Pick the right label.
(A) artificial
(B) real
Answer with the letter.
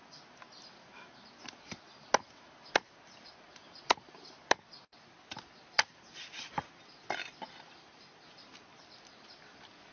B